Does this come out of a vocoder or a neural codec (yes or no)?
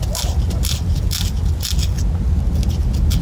no